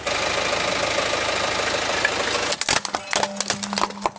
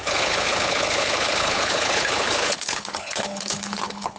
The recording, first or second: first